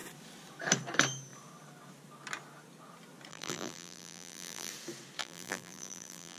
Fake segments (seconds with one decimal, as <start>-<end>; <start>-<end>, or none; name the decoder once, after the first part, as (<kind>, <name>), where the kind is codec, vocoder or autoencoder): 3.3-4.7 (vocoder, BigVGAN v2); 5.2-6.4